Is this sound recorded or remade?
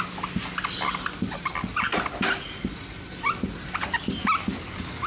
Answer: recorded